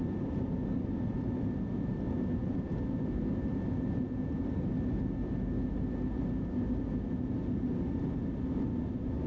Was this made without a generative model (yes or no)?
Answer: yes